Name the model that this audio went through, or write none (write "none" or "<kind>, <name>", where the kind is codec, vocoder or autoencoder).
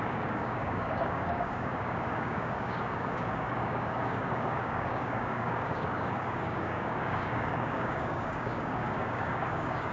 codec, DAC